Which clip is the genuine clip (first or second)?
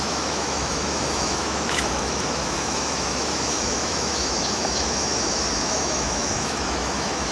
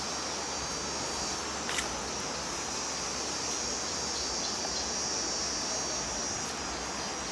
second